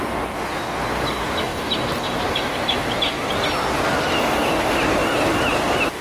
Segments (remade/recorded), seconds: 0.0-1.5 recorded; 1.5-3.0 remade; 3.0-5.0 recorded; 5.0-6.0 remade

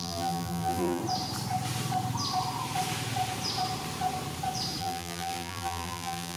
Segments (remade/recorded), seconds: 0.0-1.0 remade; 1.0-4.8 recorded; 4.8-6.4 remade

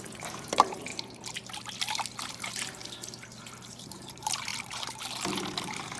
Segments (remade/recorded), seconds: 0.0-0.9 remade; 0.9-2.3 recorded; 2.3-2.8 remade; 2.8-3.6 recorded; 3.6-4.5 remade; 4.5-5.6 recorded; 5.6-6.0 remade

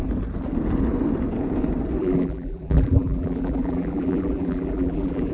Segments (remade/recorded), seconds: 0.0-2.0 recorded; 2.0-5.3 remade

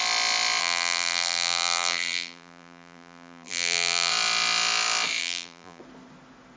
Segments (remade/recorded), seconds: 0.0-0.6 recorded; 0.6-4.1 remade; 4.1-5.2 recorded; 5.2-5.8 remade; 5.8-6.6 recorded

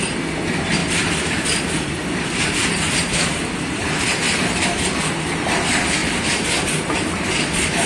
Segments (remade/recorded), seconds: 0.0-0.8 recorded; 0.8-5.5 remade; 5.5-6.0 recorded; 6.0-7.4 remade; 7.4-7.9 recorded

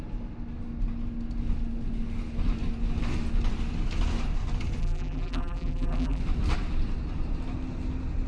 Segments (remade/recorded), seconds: 0.0-4.8 recorded; 4.8-6.2 remade; 6.2-8.3 recorded